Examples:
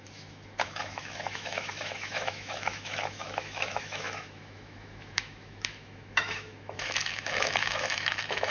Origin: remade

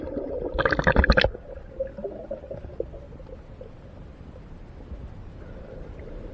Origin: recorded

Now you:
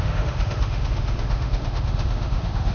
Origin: remade